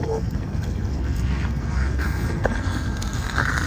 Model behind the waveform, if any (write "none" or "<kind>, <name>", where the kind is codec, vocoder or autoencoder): codec, SNAC